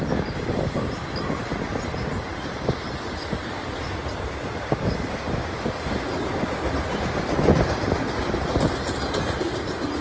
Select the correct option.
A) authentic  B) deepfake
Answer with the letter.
A